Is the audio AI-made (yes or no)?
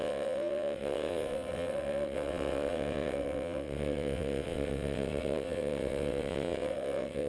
yes